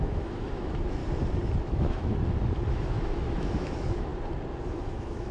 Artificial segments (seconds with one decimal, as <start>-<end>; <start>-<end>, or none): 0.0-1.0; 1.6-2.1; 2.7-4.1; 4.7-5.3